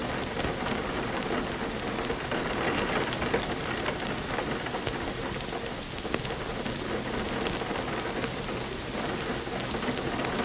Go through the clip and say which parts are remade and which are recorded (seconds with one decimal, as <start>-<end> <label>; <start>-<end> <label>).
0.0-10.4 recorded